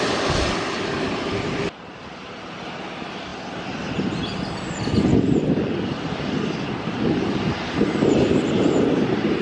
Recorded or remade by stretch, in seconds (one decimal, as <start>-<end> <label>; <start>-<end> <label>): 0.0-9.4 remade